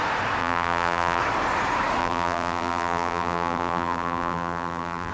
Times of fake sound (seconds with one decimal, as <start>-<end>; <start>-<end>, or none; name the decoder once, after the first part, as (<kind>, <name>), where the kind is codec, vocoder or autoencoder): 0.4-1.2 (vocoder, BigVGAN v2); 2.0-5.1